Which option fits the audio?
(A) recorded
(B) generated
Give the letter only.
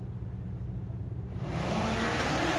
A